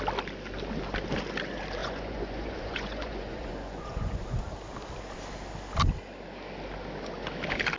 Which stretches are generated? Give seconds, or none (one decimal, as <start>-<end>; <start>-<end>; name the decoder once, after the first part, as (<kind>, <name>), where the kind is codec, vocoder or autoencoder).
1.8-4.4 (vocoder, Vocos)